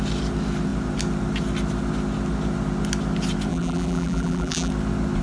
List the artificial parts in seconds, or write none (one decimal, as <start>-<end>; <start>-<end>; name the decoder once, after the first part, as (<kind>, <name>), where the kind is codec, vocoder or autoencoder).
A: 3.5-4.7 (vocoder, BigVGAN v2)